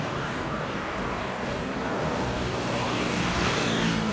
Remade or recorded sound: remade